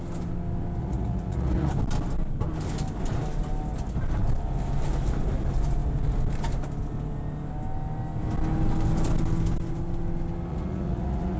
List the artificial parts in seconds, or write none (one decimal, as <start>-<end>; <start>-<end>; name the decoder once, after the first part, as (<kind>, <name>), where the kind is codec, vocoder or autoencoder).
0.8-1.7 (vocoder, Vocos); 10.5-11.4